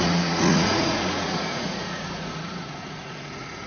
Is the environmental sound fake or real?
fake